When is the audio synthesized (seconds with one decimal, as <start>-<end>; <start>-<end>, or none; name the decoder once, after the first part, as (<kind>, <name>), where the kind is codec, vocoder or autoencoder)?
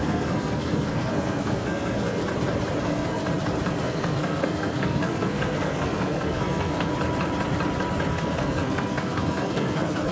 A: 0.0-2.2 (codec, SNAC); 2.8-3.2; 3.8-6.9; 8.1-10.1